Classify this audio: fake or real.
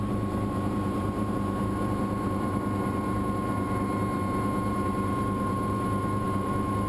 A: fake